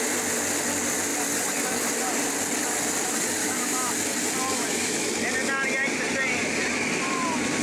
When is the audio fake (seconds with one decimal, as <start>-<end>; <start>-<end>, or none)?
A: 3.4-3.9; 4.5-5.1